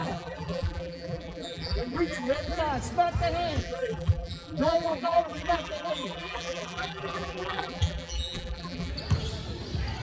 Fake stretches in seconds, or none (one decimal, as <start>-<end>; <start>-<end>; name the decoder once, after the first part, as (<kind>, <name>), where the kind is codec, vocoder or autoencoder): 0.0-2.6 (vocoder, BigVGAN v2); 3.6-8.9